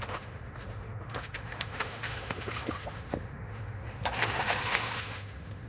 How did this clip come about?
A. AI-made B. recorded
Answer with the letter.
A